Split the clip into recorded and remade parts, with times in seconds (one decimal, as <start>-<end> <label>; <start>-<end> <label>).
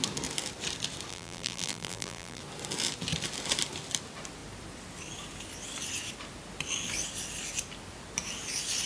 0.0-1.1 recorded; 1.1-2.4 remade; 2.4-8.9 recorded